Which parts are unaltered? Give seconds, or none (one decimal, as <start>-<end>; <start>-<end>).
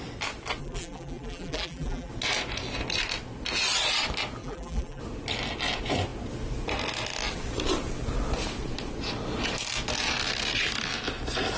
0.0-0.6; 2.1-4.4; 5.0-11.6